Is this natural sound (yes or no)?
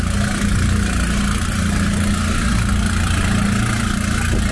yes